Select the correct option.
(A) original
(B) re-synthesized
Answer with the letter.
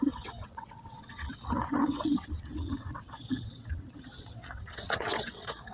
B